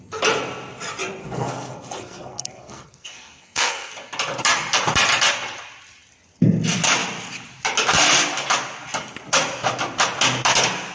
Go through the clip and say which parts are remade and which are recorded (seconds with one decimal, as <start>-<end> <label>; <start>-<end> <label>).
0.0-1.2 recorded; 1.2-3.9 remade; 3.9-10.9 recorded